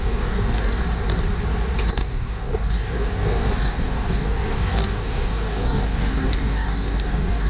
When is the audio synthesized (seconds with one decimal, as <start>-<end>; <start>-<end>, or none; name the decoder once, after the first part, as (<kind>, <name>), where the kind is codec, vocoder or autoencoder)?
0.0-0.8 (codec, DAC); 1.9-7.5